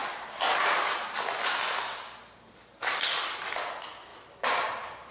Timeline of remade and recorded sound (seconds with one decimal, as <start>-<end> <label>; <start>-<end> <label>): 0.0-2.6 recorded; 2.6-3.5 remade; 3.5-4.1 recorded; 4.1-5.1 remade